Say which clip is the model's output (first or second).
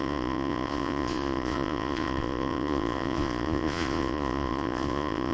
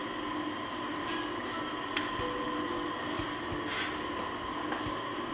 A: first